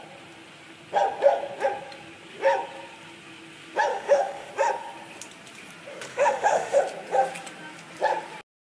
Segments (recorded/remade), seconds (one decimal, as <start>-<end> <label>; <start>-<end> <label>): 0.0-3.9 recorded; 3.9-4.5 remade; 4.5-6.1 recorded; 6.1-6.8 remade; 6.8-8.6 recorded